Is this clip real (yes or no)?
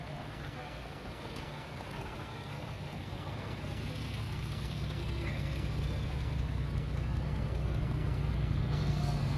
no